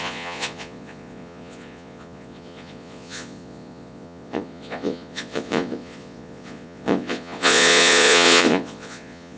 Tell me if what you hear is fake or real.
fake